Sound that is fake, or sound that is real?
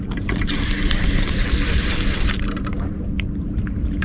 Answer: fake